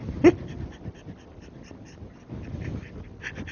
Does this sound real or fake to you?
real